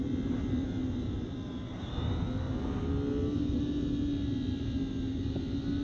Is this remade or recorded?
recorded